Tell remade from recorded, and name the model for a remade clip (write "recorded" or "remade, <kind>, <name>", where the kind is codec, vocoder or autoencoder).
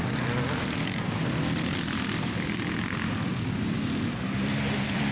recorded